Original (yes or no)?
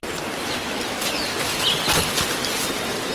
yes